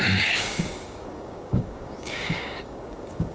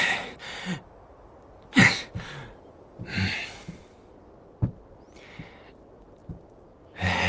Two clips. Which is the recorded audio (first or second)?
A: second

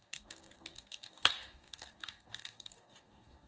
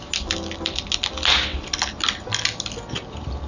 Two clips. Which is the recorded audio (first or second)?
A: second